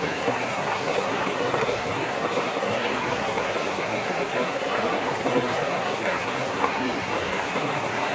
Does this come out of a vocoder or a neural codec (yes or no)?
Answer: yes